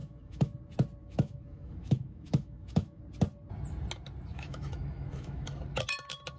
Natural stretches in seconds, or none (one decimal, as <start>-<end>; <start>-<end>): 0.5-1.0; 3.0-4.3; 5.6-6.4